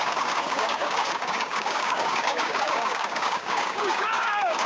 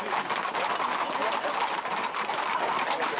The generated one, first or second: first